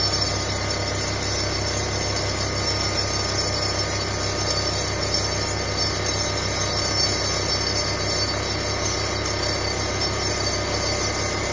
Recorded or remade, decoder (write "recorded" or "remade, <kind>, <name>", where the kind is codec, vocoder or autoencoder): recorded